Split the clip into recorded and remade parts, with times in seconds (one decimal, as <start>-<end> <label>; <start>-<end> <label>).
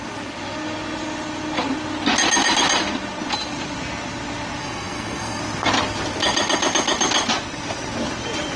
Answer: 0.0-4.6 recorded; 4.6-5.4 remade; 5.4-8.6 recorded